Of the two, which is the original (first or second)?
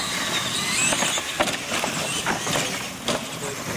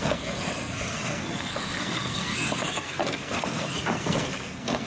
first